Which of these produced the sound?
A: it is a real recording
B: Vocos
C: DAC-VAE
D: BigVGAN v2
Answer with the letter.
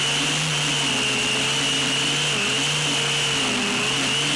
A